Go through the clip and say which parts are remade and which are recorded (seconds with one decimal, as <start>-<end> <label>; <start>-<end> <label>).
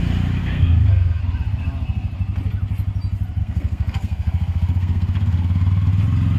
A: 0.0-0.4 recorded; 0.4-1.2 remade; 1.2-3.4 recorded; 3.4-5.9 remade; 5.9-6.4 recorded